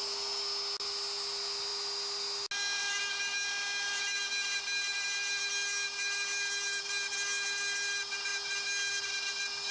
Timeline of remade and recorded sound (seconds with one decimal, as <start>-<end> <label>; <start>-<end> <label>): 0.0-9.7 recorded